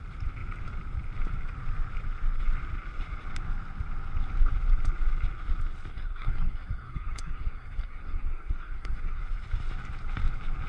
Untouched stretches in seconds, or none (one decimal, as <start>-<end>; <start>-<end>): 0.0-5.9; 9.2-10.7

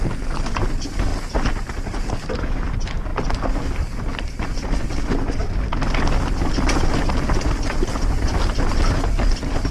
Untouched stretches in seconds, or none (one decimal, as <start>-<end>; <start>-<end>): 0.0-9.7

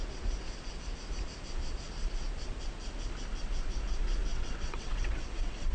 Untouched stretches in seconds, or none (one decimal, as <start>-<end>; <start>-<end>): 0.0-4.3

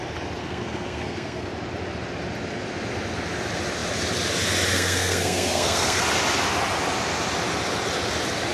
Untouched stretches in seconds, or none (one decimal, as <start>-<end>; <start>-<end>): 0.0-0.4; 1.5-4.7; 6.0-8.5

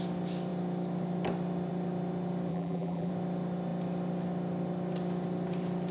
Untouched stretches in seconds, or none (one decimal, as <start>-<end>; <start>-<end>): 0.0-2.5; 3.1-5.9

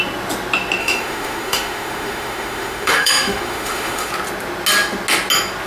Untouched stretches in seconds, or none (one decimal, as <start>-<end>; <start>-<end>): 0.0-0.8; 4.1-5.7